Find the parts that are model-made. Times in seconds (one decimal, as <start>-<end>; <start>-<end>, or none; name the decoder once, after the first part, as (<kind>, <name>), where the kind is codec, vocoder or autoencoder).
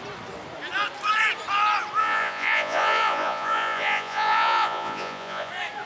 2.0-5.5 (vocoder, Vocos)